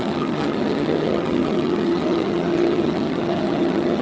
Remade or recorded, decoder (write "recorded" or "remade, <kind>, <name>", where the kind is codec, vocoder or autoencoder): remade, vocoder, HiFi-GAN